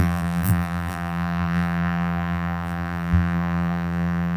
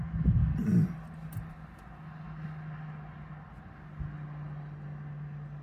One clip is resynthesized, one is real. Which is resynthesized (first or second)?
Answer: first